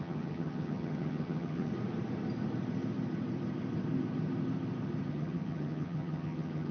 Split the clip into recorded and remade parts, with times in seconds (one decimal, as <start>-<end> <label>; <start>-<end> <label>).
0.0-1.7 remade; 1.7-5.1 recorded; 5.1-6.7 remade